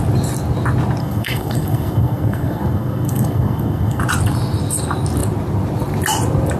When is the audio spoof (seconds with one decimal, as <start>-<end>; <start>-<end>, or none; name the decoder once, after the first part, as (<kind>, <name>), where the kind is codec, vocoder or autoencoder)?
1.0-4.0 (codec, SNAC)